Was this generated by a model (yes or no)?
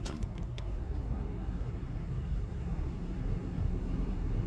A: yes